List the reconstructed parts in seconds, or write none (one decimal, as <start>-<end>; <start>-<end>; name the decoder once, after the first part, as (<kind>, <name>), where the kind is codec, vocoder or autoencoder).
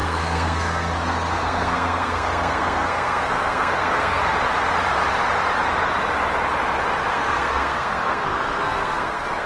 0.0-4.2 (codec, SNAC); 7.1-9.5